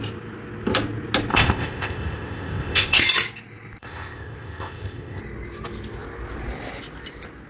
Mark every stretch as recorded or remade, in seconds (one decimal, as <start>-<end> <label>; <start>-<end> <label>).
0.0-1.3 recorded; 1.3-3.0 remade; 3.0-3.8 recorded; 3.8-5.2 remade; 5.2-7.5 recorded